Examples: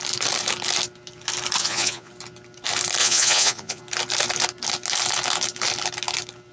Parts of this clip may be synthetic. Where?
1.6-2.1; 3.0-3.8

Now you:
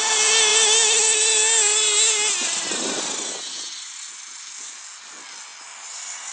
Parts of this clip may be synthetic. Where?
none